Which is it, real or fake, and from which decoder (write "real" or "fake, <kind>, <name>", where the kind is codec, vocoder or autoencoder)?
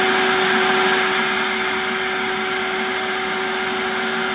real